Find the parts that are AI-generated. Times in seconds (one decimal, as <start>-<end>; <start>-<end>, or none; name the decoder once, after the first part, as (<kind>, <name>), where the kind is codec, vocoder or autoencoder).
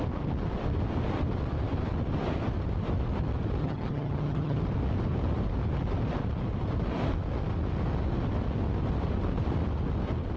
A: 3.6-4.6 (vocoder, HiFi-GAN)